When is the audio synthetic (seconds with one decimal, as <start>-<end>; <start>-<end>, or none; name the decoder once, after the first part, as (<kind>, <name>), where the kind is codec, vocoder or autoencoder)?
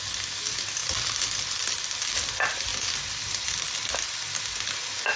none